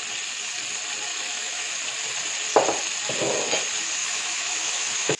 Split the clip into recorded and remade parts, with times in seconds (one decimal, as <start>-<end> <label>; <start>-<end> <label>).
0.0-1.1 recorded; 1.1-1.7 remade; 1.7-4.0 recorded; 4.0-5.2 remade